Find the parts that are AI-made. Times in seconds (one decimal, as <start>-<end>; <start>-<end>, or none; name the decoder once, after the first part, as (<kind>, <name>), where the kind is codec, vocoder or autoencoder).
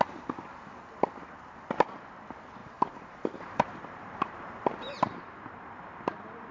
2.6-6.5 (vocoder, BigVGAN v2)